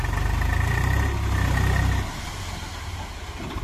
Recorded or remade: recorded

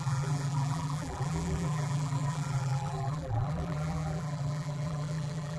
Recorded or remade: remade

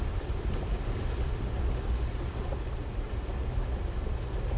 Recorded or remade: remade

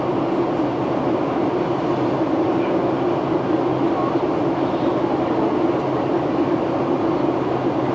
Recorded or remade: recorded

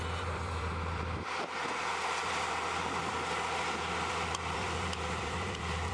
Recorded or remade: remade